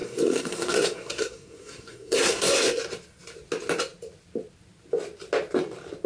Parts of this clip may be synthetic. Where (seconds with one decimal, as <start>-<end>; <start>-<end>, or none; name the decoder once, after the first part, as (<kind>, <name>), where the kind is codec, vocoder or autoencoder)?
0.0-2.8 (codec, SNAC)